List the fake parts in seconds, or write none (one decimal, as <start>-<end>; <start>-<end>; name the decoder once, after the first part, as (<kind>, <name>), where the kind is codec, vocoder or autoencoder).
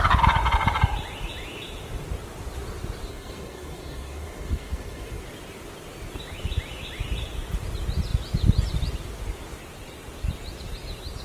3.1-5.2 (codec, SNAC)